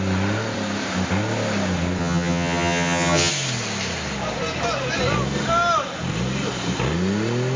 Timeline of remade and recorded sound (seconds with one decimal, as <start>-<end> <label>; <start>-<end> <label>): 0.0-2.0 recorded; 2.0-3.3 remade; 3.3-7.6 recorded